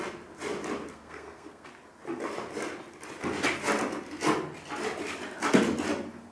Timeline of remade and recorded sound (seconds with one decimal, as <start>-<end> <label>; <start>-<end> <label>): 0.0-0.9 recorded; 0.9-1.7 remade; 1.7-6.3 recorded